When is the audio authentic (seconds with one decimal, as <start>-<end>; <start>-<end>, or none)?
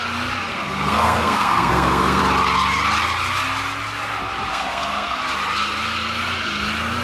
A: 0.0-0.5; 2.2-4.5; 5.2-7.0